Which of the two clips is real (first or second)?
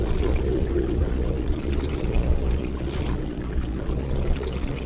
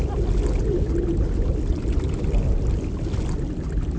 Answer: second